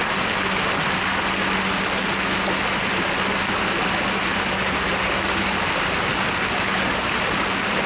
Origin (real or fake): real